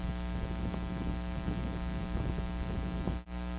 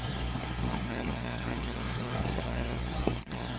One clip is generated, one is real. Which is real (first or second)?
first